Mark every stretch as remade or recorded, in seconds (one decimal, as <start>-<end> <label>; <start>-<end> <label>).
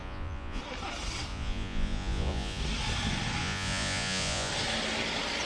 0.0-0.6 remade; 0.6-1.3 recorded; 1.3-2.6 remade; 2.6-3.4 recorded; 3.4-4.5 remade; 4.5-5.5 recorded